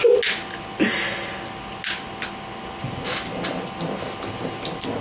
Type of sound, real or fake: real